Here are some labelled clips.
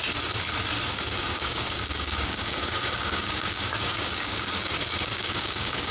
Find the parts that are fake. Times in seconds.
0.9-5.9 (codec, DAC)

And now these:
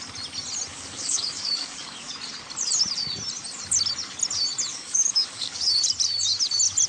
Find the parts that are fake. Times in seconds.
0.7-2.1 (codec, DAC); 4.7-5.8

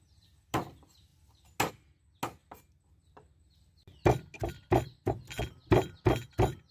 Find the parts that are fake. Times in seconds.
none